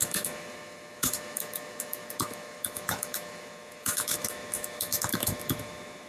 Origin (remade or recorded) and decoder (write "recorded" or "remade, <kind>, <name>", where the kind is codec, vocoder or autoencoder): remade, autoencoder, DAC-VAE